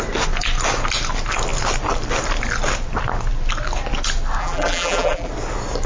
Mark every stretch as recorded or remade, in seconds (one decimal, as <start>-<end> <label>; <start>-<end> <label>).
0.0-4.4 recorded; 4.4-5.3 remade; 5.3-5.9 recorded